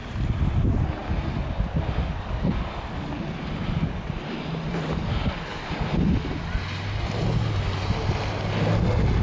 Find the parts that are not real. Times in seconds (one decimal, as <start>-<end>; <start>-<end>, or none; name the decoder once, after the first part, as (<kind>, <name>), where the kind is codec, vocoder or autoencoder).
none